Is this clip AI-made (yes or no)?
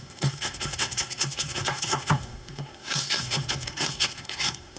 yes